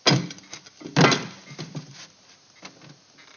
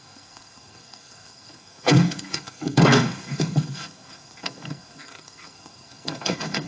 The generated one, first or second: second